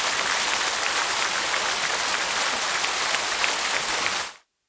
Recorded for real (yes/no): yes